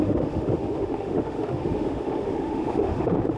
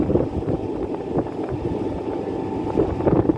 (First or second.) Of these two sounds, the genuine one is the second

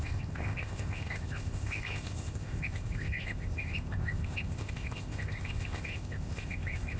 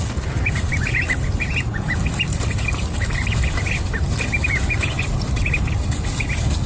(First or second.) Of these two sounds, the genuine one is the second